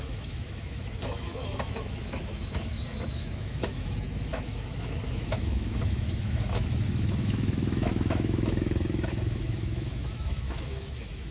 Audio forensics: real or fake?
fake